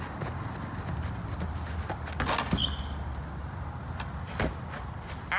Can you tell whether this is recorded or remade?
recorded